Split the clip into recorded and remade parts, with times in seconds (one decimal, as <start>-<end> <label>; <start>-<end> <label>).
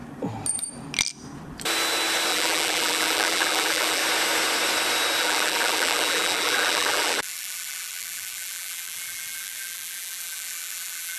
0.0-2.3 recorded; 2.3-4.0 remade; 4.0-5.2 recorded; 5.2-11.2 remade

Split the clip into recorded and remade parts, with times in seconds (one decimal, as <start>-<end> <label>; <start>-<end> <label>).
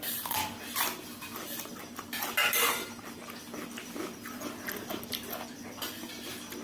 0.0-6.6 recorded